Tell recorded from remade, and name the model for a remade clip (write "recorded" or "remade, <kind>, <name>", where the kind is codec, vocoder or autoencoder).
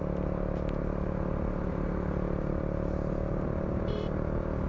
recorded